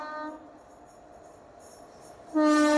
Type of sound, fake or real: real